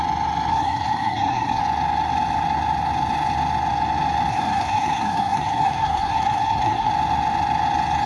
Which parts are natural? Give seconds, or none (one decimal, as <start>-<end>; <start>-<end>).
0.0-0.5; 1.6-4.3; 6.9-8.1